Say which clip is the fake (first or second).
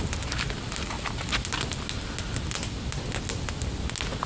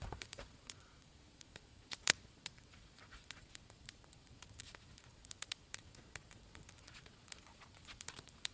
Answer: second